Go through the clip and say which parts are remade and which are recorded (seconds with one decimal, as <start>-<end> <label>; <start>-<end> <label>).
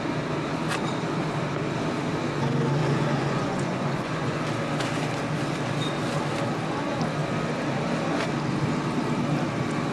0.0-2.8 recorded; 2.8-4.4 remade; 4.4-9.9 recorded